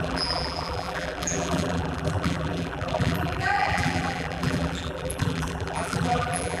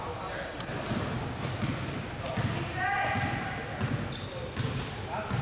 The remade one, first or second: first